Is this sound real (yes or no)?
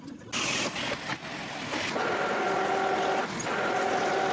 yes